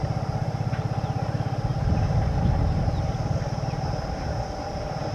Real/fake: real